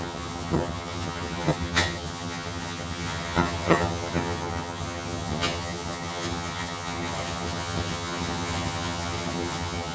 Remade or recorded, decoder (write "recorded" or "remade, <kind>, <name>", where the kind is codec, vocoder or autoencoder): remade, vocoder, HiFi-GAN